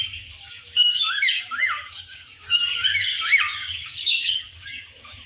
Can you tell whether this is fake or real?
fake